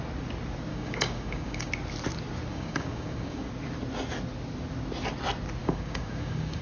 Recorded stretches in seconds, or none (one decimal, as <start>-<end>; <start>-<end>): 0.0-0.7; 1.7-2.5; 3.5-5.6